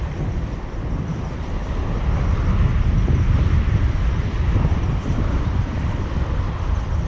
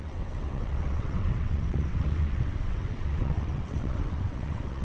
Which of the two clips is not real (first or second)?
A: second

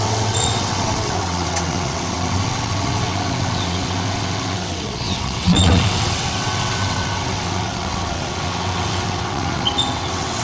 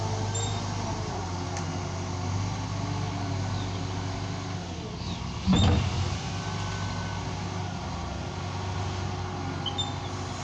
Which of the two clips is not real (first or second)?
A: first